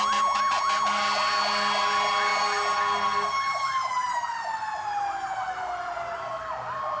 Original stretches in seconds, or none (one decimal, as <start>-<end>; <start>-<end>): 0.0-7.0